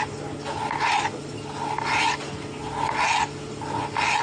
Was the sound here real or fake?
real